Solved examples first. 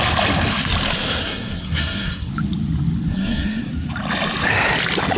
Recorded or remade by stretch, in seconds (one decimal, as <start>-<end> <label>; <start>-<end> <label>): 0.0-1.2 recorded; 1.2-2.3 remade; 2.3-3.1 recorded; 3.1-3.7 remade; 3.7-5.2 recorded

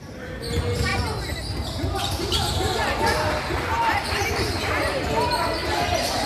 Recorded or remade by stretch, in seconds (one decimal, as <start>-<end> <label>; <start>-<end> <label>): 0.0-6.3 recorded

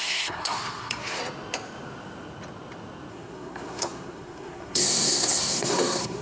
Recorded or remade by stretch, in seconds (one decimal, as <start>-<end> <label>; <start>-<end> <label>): 0.0-1.2 remade; 1.2-3.1 recorded; 3.1-6.2 remade